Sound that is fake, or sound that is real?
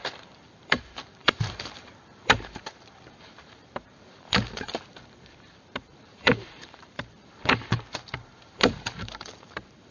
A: fake